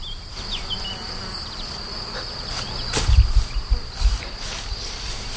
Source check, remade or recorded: recorded